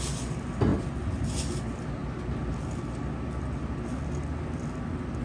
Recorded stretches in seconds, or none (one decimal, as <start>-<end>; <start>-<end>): 0.0-5.2